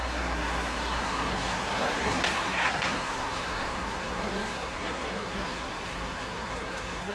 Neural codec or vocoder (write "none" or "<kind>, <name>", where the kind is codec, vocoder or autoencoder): codec, SNAC